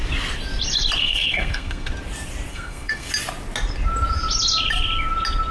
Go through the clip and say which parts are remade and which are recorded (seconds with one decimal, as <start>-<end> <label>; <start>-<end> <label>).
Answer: 0.0-1.0 recorded; 1.0-1.9 remade; 1.9-2.5 recorded; 2.5-3.1 remade; 3.1-5.5 recorded